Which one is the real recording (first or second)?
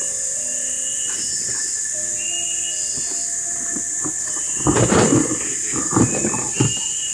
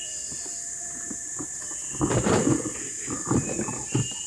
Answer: first